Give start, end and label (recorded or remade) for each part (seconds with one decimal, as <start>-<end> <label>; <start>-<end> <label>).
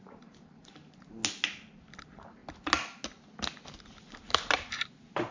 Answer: 0.0-1.2 remade; 1.2-2.0 recorded; 2.0-2.4 remade; 2.4-4.0 recorded; 4.0-5.3 remade